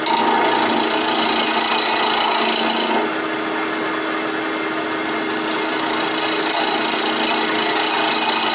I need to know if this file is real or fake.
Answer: real